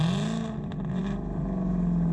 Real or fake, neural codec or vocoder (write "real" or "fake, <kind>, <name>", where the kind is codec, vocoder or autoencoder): real